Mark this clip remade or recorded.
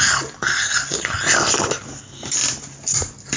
recorded